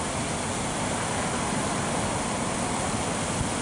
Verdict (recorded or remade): recorded